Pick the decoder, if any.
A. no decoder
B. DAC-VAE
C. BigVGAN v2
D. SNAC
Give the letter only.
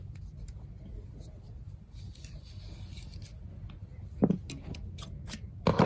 A